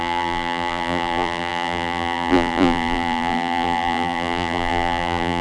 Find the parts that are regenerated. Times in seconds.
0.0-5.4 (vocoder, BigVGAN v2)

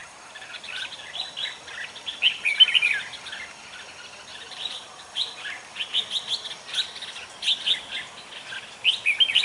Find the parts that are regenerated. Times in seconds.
0.0-1.1 (vocoder, BigVGAN v2); 4.3-5.9